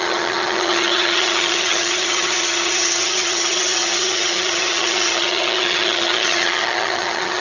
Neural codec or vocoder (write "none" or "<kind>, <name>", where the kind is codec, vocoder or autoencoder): vocoder, HiFi-GAN